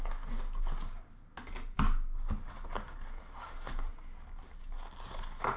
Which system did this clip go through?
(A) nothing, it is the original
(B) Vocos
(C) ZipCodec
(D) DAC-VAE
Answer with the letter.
A